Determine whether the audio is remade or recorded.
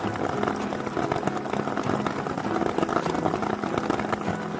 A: recorded